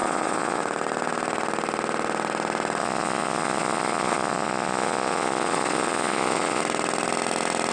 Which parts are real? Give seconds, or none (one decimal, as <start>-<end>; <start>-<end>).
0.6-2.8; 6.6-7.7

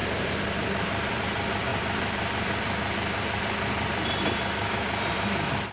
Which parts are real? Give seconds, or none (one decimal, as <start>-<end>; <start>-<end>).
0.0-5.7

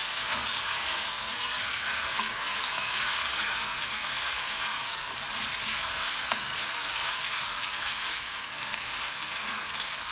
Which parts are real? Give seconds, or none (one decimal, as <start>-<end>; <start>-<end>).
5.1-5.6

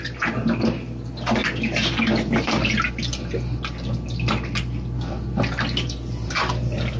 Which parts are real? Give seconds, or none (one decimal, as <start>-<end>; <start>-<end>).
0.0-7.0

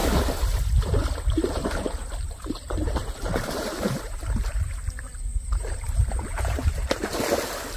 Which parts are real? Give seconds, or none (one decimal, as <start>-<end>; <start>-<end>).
4.7-5.3; 7.2-7.8

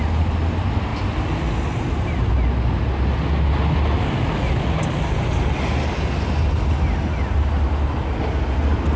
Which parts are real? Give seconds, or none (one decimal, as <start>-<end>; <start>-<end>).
0.0-9.0